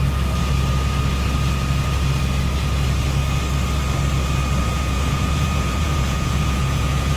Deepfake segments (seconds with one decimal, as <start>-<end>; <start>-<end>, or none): 4.6-7.2